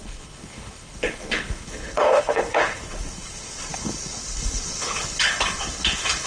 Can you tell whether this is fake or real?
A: fake